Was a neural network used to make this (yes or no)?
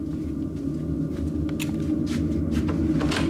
no